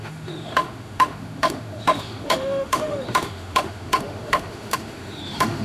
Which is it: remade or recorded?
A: remade